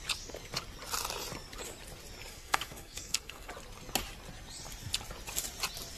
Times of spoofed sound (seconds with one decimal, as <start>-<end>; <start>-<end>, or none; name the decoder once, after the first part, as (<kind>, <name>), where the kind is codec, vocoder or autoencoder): 2.3-3.5 (codec, SNAC)